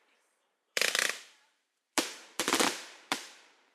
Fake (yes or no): yes